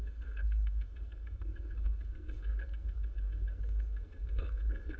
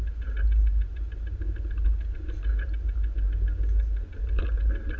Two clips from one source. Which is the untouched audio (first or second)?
second